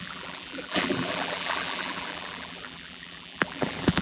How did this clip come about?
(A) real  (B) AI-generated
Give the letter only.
B